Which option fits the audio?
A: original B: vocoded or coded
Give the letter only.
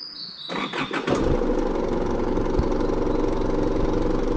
A